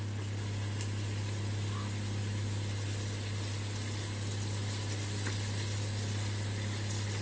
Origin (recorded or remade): recorded